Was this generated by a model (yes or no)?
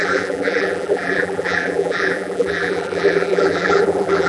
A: yes